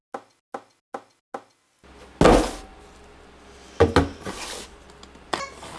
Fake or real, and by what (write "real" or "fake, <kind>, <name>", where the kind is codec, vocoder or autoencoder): real